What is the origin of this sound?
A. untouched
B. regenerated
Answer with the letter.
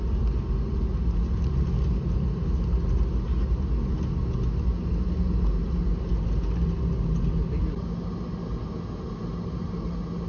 A